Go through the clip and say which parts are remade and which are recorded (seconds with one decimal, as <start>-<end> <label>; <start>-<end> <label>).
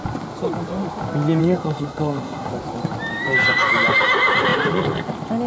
0.0-1.4 recorded; 1.4-2.5 remade; 2.5-5.5 recorded